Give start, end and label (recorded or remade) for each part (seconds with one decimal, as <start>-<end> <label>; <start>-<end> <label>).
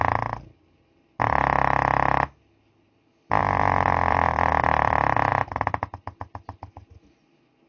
0.0-7.7 recorded